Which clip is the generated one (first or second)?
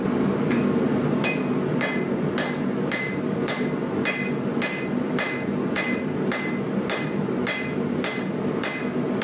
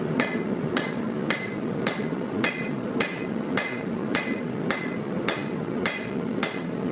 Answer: second